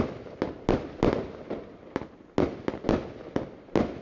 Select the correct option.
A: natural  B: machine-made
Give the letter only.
A